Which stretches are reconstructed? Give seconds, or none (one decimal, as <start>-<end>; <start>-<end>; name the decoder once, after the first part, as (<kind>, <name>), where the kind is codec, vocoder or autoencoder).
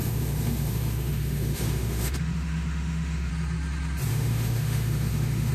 0.0-3.3 (autoencoder, DAC-VAE); 4.1-5.5